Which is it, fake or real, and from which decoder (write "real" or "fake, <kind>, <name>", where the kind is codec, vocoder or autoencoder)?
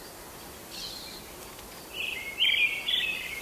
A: real